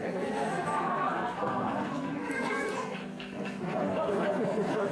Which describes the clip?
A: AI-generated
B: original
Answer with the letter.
A